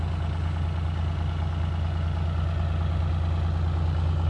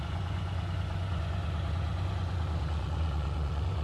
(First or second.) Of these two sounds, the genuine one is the first